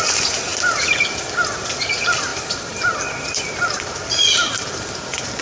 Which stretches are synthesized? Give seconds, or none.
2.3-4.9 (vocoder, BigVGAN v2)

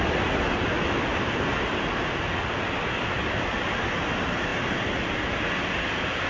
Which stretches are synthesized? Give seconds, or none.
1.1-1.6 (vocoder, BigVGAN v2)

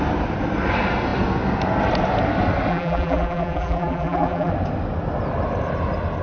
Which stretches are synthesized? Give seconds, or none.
2.7-4.5 (vocoder, BigVGAN v2)

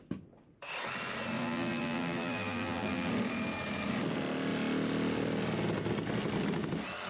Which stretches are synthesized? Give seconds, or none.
1.4-3.1 (vocoder, BigVGAN v2)

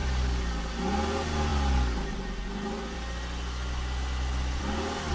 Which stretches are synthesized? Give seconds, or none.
none

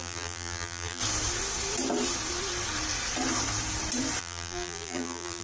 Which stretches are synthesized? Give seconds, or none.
0.0-1.0 (vocoder, BigVGAN v2); 4.2-5.4

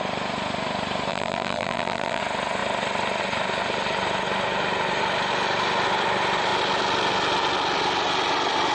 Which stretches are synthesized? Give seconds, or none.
1.1-2.2 (vocoder, BigVGAN v2)